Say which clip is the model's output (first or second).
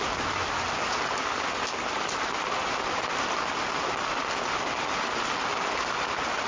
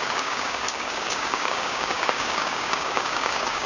second